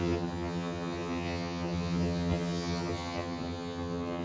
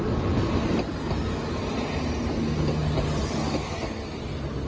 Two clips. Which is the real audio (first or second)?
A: second